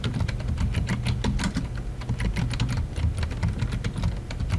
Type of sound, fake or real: real